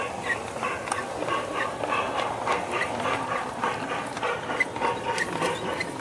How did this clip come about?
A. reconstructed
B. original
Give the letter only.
B